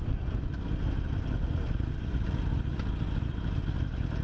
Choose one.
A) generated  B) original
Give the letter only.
B